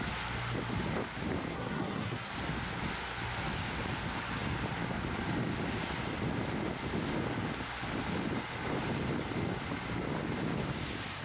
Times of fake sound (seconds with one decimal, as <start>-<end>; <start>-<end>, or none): 1.5-2.3